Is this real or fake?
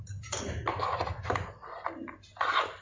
real